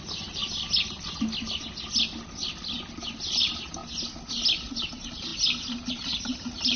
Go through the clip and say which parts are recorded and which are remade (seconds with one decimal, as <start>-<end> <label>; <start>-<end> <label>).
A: 0.0-0.4 remade; 0.4-3.0 recorded; 3.0-3.8 remade; 3.8-4.7 recorded; 4.7-5.3 remade; 5.3-5.9 recorded; 5.9-6.8 remade

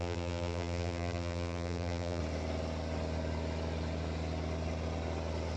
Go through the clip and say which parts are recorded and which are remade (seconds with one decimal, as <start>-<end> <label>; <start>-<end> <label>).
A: 0.0-2.2 remade; 2.2-5.6 recorded